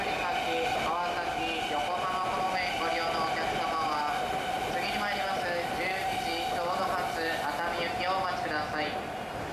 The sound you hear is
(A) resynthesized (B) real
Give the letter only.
B